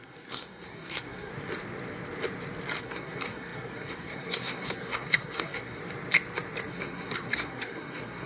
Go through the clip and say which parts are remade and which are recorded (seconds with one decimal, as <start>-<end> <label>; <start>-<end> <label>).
0.0-1.3 remade; 1.3-2.8 recorded; 2.8-5.8 remade; 5.8-6.7 recorded; 6.7-8.3 remade